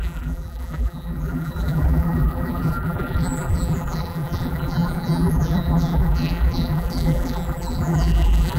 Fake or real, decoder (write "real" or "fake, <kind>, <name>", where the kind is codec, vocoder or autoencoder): fake, vocoder, BigVGAN v2